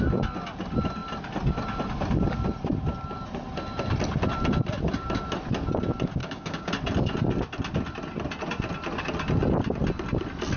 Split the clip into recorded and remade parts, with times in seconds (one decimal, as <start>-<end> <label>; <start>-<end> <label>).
0.0-6.2 recorded; 6.2-6.7 remade; 6.7-10.6 recorded